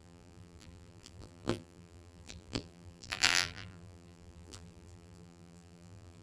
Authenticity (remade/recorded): remade